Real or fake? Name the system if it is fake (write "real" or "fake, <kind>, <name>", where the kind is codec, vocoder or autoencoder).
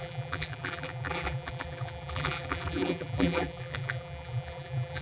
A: fake, vocoder, BigVGAN v2